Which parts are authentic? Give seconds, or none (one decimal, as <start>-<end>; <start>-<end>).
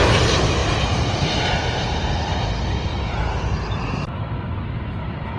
2.9-5.0